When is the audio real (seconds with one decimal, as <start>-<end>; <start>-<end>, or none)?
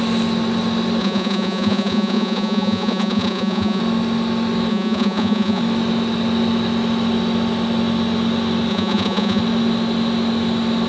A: 0.0-1.0; 3.8-4.7; 5.6-8.7; 9.4-10.9